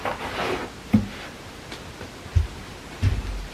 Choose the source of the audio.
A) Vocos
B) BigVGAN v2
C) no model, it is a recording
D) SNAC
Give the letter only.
C